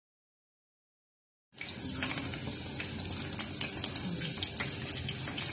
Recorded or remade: recorded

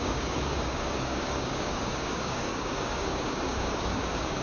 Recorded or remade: remade